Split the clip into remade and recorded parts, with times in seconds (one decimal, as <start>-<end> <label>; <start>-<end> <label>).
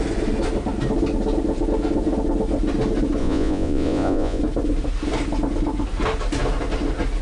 0.0-3.2 recorded; 3.2-4.4 remade; 4.4-7.2 recorded